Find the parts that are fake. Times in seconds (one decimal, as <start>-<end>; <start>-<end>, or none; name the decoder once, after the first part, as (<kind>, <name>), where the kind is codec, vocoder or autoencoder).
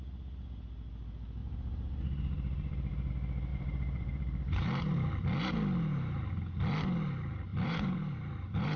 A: 1.4-3.1 (vocoder, BigVGAN v2); 3.5-5.1; 7.5-8.8